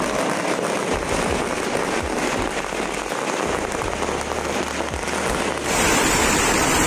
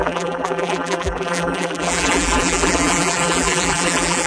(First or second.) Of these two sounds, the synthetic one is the second